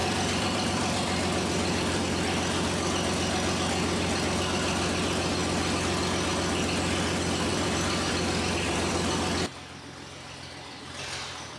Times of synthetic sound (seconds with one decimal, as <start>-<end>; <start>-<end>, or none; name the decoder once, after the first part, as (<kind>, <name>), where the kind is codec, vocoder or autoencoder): 0.0-2.1 (vocoder, BigVGAN v2); 7.5-8.9